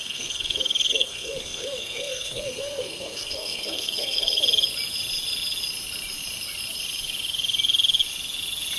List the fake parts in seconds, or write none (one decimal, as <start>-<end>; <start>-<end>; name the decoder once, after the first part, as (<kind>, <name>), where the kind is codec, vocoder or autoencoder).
0.0-4.4 (codec, SNAC)